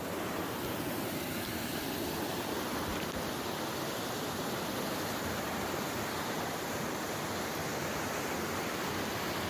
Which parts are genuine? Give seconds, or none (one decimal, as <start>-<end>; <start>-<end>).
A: 0.0-9.5